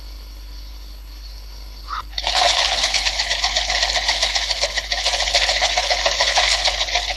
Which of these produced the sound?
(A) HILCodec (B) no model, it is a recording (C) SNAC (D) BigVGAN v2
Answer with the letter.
A